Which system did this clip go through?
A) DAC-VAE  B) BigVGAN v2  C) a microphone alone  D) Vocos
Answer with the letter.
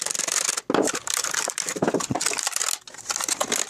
C